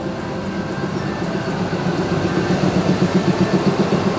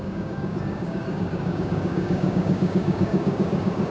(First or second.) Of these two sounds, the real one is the first